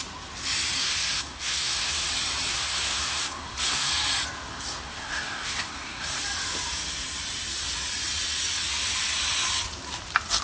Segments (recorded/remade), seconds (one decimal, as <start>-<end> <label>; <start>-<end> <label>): 0.0-0.8 recorded; 0.8-2.1 remade; 2.1-2.5 recorded; 2.5-3.9 remade; 3.9-4.5 recorded; 4.5-6.2 remade; 6.2-10.4 recorded